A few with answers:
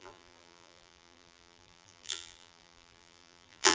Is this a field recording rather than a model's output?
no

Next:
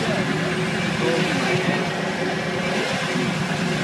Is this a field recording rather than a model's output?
yes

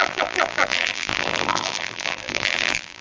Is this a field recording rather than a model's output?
no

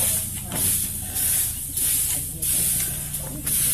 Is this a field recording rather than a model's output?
yes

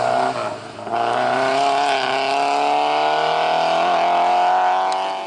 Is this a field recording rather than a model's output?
yes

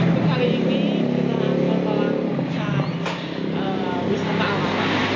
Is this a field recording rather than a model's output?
yes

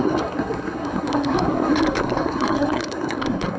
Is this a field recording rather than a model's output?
no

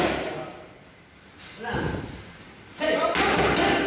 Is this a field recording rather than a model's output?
yes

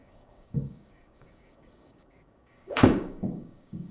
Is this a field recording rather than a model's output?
no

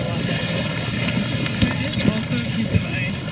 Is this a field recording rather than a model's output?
yes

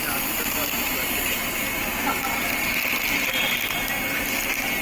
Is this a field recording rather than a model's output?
yes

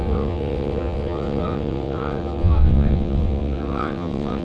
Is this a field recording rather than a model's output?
no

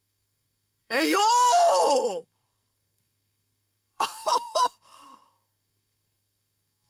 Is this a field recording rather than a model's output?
no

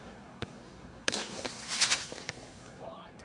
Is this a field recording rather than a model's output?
no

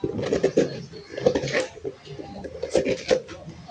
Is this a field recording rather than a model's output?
yes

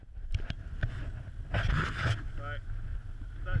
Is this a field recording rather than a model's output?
yes